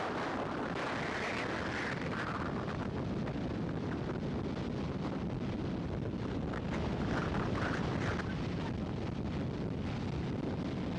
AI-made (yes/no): no